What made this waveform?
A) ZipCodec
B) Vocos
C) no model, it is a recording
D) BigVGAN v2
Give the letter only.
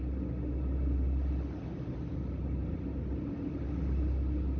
C